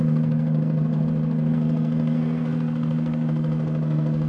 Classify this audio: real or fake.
fake